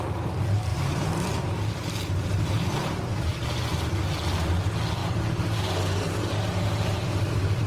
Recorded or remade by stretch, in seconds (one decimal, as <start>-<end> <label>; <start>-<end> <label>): 0.0-0.7 recorded; 0.7-3.8 remade; 3.8-5.0 recorded; 5.0-7.7 remade